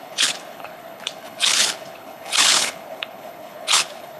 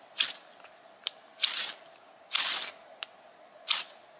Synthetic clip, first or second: first